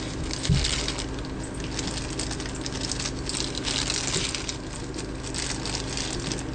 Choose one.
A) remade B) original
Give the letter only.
B